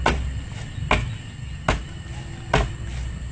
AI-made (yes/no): no